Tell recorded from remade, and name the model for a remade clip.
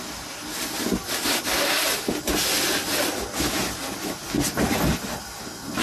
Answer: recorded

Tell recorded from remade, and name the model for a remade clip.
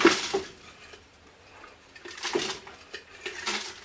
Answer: recorded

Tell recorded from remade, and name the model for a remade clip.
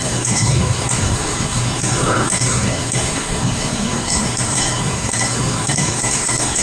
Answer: remade, codec, SNAC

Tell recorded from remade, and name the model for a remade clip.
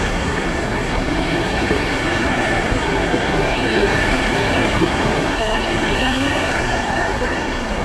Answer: remade, codec, SNAC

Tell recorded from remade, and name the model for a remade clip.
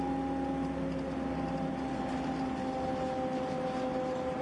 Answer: recorded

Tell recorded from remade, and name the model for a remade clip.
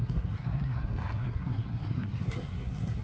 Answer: remade, codec, SNAC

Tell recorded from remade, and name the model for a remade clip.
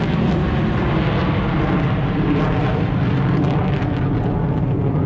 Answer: recorded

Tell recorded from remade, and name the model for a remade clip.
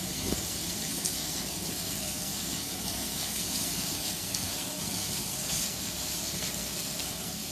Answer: remade, codec, SNAC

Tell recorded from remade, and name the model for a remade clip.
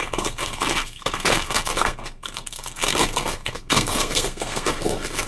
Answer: remade, codec, SNAC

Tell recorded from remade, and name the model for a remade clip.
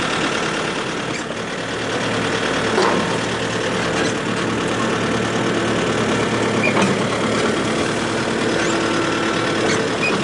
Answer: recorded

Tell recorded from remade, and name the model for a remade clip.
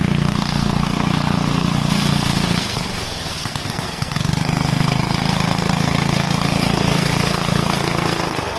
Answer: remade, codec, SNAC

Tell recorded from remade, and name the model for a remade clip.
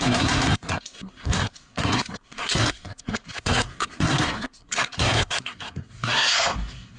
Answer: remade, codec, SNAC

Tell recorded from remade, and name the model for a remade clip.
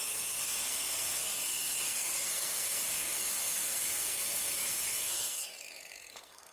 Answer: remade, codec, SNAC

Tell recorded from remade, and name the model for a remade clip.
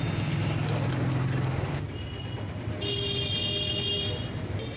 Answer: recorded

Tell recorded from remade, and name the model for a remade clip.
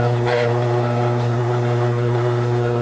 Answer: remade, codec, SNAC